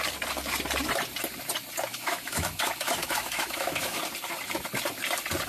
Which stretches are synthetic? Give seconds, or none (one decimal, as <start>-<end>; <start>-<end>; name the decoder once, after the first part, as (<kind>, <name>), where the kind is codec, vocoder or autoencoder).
1.9-4.0 (autoencoder, DAC-VAE)

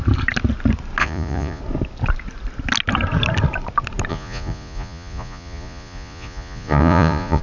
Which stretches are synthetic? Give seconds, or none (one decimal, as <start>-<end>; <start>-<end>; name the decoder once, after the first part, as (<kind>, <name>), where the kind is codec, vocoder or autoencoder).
1.0-1.6 (vocoder, Vocos); 4.1-7.4

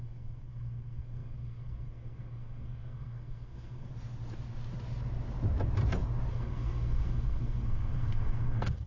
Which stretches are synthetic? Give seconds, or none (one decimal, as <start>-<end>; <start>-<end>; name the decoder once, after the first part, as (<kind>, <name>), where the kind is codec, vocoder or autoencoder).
0.0-3.9 (codec, SNAC); 6.3-8.9

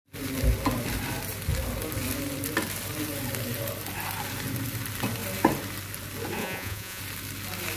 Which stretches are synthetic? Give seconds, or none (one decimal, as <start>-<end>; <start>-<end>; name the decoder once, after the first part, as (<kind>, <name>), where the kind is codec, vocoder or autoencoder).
6.4-7.0 (vocoder, Vocos)

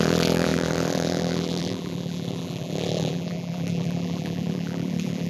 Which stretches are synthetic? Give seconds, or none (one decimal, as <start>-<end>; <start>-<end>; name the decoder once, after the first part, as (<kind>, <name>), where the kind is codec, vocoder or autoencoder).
0.0-5.3 (vocoder, BigVGAN v2)

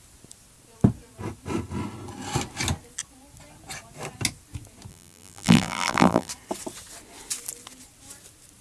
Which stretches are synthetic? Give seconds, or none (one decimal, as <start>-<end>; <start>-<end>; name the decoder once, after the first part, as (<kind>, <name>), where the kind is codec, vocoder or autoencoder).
4.9-6.3 (vocoder, BigVGAN v2)

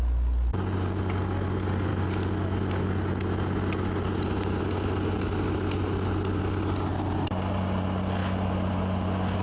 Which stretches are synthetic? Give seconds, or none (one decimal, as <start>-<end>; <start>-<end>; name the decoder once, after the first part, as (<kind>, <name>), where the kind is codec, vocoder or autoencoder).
none